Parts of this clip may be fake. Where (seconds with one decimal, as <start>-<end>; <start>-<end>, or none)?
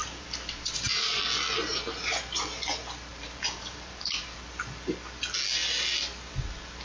0.0-1.2; 3.1-4.4